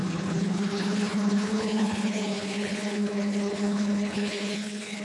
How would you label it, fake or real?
fake